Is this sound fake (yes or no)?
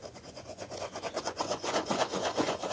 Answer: yes